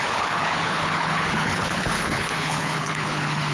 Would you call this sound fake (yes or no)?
yes